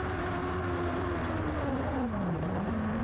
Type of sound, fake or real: real